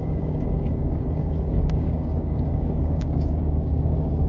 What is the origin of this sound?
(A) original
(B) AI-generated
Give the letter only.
B